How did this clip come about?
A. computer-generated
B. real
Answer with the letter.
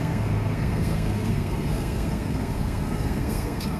A